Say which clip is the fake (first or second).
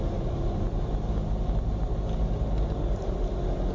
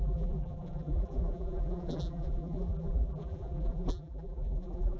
second